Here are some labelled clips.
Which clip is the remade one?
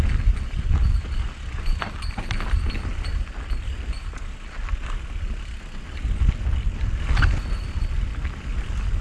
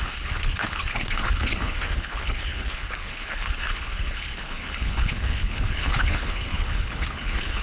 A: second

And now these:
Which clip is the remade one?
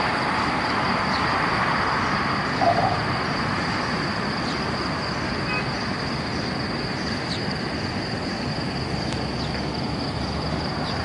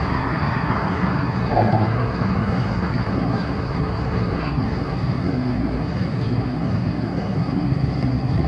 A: second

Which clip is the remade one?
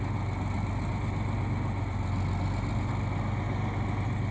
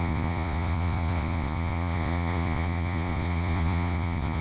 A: second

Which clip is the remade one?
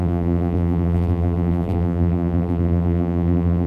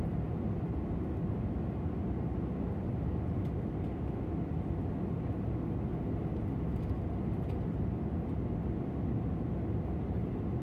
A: first